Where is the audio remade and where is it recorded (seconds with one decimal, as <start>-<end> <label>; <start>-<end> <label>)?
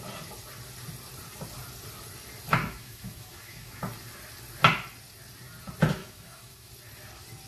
0.0-2.6 recorded; 2.6-3.8 remade; 3.8-6.0 recorded; 6.0-6.7 remade; 6.7-7.5 recorded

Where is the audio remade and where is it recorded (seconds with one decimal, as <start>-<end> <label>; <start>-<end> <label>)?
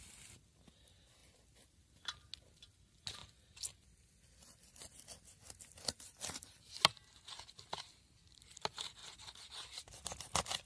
0.0-10.7 recorded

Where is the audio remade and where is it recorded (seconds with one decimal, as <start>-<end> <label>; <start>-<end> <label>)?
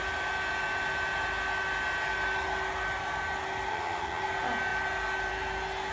0.0-3.7 recorded; 3.7-4.2 remade; 4.2-5.9 recorded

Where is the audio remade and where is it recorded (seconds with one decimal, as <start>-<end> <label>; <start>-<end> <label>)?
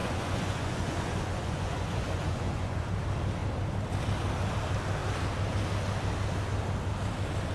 0.0-2.9 remade; 2.9-7.5 recorded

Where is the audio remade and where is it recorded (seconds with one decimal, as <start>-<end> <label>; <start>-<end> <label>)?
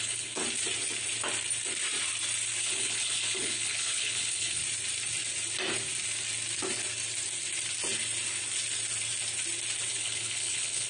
0.0-0.4 remade; 0.4-2.6 recorded; 2.6-4.6 remade; 4.6-9.9 recorded; 9.9-10.9 remade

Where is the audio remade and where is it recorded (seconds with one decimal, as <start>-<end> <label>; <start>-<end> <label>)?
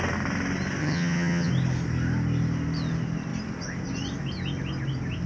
0.0-0.8 recorded; 0.8-1.5 remade; 1.5-5.3 recorded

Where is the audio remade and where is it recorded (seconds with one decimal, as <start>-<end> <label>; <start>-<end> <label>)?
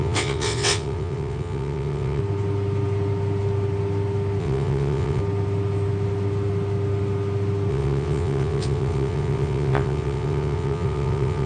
0.0-2.2 remade; 2.2-4.4 recorded; 4.4-5.2 remade; 5.2-7.7 recorded; 7.7-11.5 remade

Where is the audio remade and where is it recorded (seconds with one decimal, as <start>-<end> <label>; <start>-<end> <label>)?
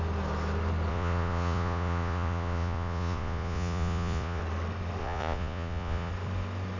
0.0-0.9 recorded; 0.9-4.4 remade; 4.4-5.0 recorded; 5.0-6.1 remade; 6.1-6.8 recorded